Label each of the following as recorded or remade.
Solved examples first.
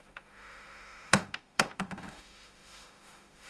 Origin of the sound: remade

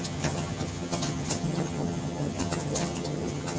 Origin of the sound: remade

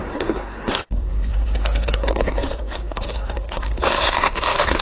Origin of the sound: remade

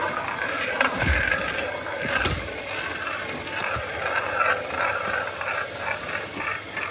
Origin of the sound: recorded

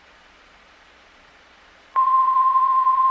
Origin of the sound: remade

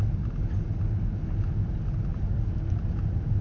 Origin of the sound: recorded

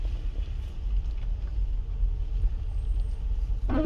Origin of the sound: recorded